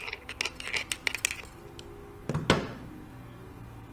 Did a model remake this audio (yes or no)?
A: no